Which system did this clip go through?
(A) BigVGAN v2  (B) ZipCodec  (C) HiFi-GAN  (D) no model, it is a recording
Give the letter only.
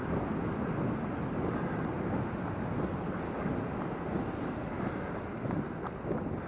D